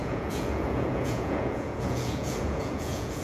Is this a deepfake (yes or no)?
yes